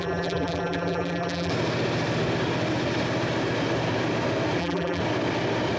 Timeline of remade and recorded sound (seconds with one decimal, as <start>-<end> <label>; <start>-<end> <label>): 0.0-1.5 remade; 1.5-4.6 recorded; 4.6-5.0 remade; 5.0-5.8 recorded